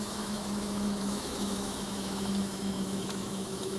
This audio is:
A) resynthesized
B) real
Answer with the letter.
A